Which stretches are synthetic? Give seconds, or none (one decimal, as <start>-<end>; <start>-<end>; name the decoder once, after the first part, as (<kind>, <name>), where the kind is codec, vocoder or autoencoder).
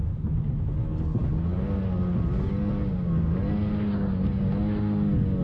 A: none